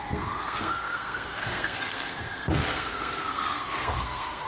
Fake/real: fake